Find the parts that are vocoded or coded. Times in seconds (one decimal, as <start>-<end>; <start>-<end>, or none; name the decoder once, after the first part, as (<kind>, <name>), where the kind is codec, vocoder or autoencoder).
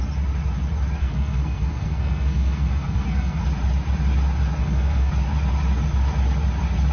1.0-3.4 (codec, SNAC); 4.6-5.1